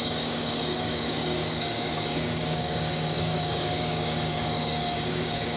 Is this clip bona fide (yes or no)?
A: no